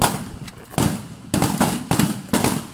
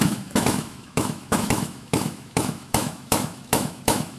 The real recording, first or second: first